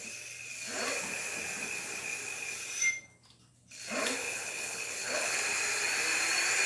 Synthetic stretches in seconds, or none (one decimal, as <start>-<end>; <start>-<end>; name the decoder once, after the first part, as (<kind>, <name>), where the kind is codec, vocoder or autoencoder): 4.2-5.4 (codec, HILCodec)